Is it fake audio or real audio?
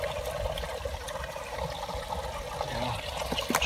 real